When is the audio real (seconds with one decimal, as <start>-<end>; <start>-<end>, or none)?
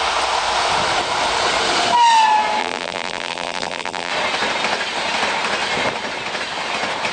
0.0-2.6; 4.1-7.1